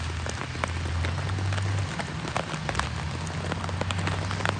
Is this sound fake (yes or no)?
no